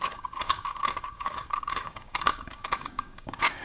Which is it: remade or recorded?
remade